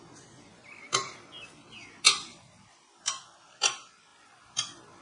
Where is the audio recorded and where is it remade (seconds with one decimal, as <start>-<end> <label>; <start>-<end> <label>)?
0.0-0.5 recorded; 0.5-1.5 remade; 1.5-2.3 recorded; 2.3-3.2 remade; 3.2-4.1 recorded; 4.1-5.0 remade